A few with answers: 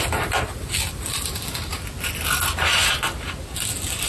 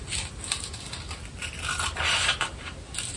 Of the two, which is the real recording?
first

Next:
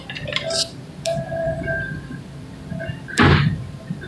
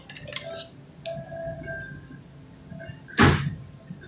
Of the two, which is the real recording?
second